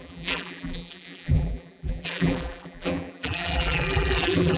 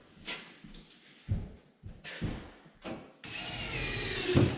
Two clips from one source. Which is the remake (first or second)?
first